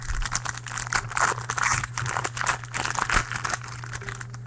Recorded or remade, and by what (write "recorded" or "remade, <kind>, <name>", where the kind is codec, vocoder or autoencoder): recorded